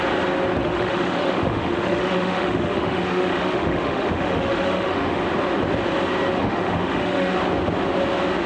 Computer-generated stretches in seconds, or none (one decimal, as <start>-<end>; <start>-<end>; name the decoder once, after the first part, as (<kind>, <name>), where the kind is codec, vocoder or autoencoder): 0.6-5.2 (autoencoder, DAC-VAE); 6.4-7.4